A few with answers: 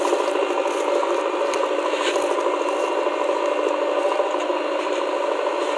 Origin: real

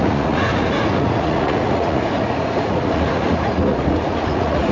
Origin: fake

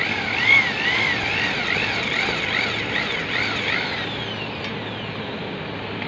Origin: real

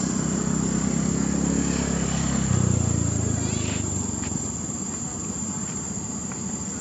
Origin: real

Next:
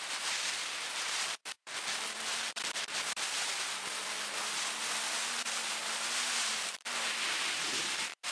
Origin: fake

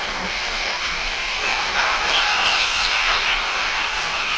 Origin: fake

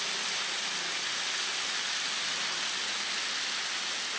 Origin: real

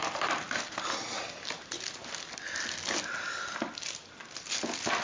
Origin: real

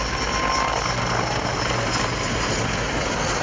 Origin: real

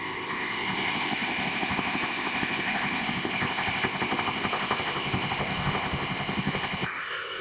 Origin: fake